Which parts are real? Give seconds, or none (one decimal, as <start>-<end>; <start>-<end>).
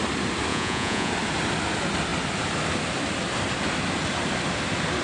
0.0-0.5; 1.1-5.0